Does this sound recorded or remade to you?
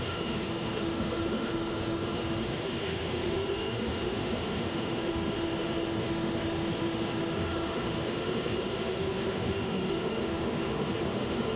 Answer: remade